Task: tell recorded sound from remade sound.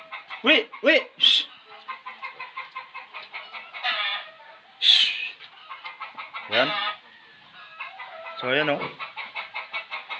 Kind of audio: recorded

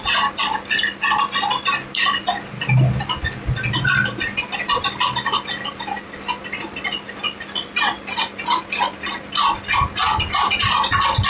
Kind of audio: recorded